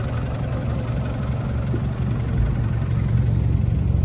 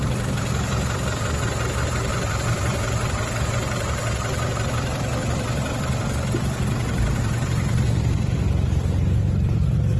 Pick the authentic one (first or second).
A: first